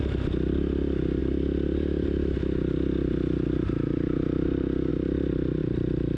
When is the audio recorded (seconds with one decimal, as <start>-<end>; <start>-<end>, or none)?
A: 0.0-6.2